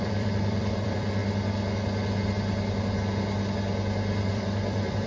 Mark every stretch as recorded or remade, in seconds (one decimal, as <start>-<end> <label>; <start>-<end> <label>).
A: 0.0-1.2 remade; 1.2-4.3 recorded; 4.3-5.1 remade